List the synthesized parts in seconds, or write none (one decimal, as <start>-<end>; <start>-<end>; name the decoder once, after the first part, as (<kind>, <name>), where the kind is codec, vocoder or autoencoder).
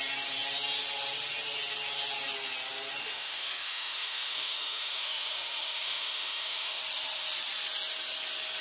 3.0-6.8 (autoencoder, DAC-VAE)